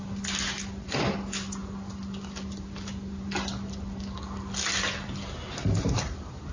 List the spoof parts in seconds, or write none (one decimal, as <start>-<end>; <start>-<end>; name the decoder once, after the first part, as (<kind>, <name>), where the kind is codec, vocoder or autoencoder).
none